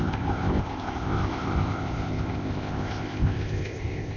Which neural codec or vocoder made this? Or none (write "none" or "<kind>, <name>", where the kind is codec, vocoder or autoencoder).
codec, ZipCodec